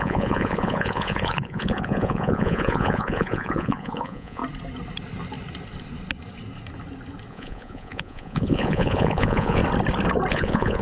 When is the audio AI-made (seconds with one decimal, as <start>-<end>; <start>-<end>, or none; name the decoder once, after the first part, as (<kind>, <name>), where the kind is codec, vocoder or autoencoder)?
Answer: 0.0-4.4 (vocoder, Vocos); 7.3-9.6; 10.3-10.8